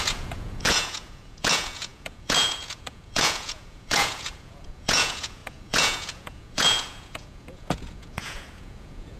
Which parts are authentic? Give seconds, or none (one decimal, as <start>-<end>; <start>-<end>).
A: none